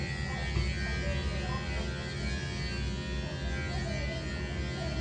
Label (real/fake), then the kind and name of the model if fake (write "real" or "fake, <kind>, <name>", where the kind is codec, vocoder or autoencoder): real